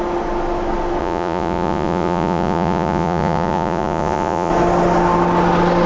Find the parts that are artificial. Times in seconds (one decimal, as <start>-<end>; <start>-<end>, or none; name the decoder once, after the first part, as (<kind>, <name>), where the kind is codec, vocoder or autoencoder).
1.0-4.5 (vocoder, Vocos)